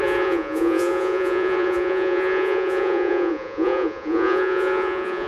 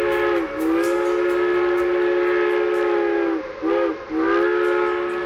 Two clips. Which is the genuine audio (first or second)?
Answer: second